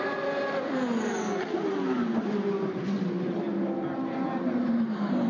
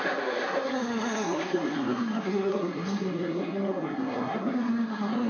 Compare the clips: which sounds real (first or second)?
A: first